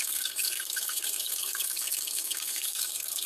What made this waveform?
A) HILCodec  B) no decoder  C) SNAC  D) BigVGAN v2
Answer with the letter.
C